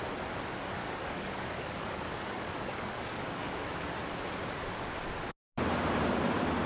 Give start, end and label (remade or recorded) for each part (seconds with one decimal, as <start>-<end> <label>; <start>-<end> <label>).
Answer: 0.0-0.8 recorded; 0.8-3.6 remade; 3.6-6.7 recorded

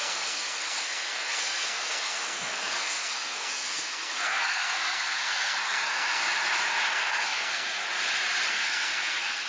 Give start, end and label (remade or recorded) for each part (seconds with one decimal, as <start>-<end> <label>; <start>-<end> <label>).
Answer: 0.0-6.2 remade; 6.2-6.9 recorded; 6.9-7.8 remade; 7.8-8.5 recorded; 8.5-9.5 remade

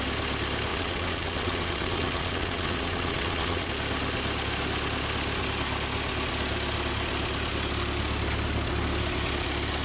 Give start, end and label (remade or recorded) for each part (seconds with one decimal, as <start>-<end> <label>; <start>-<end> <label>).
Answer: 0.0-0.7 recorded; 0.7-3.7 remade; 3.7-9.8 recorded

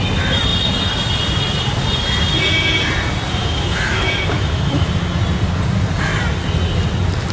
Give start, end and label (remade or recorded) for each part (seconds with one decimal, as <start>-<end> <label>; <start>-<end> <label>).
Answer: 0.0-3.4 recorded; 3.4-4.9 remade; 4.9-7.3 recorded

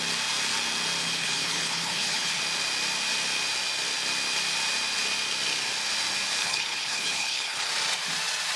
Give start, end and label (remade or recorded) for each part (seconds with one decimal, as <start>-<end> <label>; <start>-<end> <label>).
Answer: 0.0-1.0 recorded; 1.0-2.4 remade; 2.4-6.4 recorded; 6.4-7.7 remade; 7.7-8.6 recorded

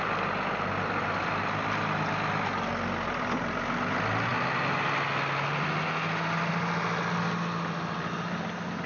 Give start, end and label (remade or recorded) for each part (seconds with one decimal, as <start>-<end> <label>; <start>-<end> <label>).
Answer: 0.0-8.9 recorded